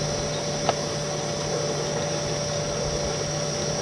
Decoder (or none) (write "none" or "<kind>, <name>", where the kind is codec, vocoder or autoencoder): none